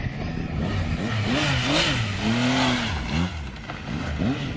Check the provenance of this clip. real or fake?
real